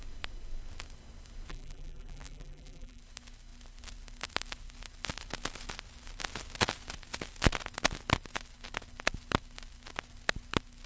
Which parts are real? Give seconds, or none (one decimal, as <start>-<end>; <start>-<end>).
0.0-1.5; 3.0-10.9